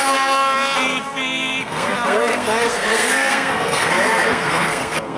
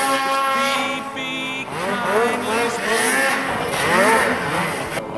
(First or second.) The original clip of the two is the second